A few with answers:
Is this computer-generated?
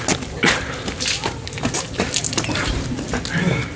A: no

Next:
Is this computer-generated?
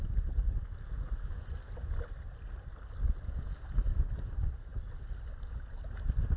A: no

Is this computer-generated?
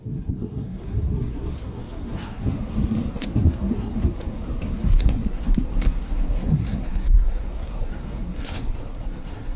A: yes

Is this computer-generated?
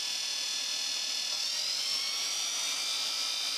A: no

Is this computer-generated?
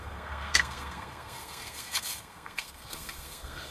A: yes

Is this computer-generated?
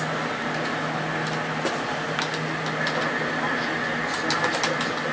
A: no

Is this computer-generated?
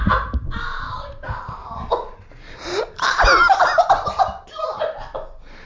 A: no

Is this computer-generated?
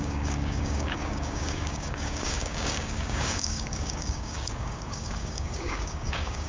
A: yes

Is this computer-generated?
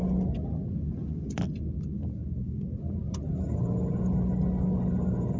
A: no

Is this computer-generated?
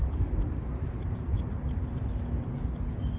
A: no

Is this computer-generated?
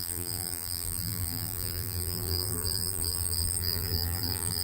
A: yes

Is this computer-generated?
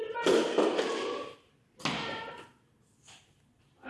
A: no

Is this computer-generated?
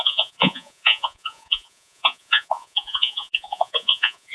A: yes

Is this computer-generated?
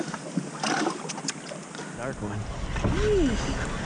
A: no